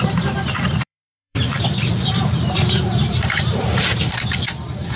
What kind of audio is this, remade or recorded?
remade